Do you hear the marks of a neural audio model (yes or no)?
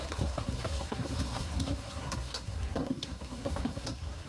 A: yes